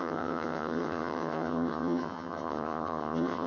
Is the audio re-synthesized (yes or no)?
yes